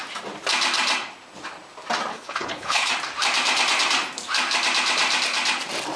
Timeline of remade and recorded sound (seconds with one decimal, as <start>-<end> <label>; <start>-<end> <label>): 0.0-2.1 recorded; 2.1-2.9 remade; 2.9-6.0 recorded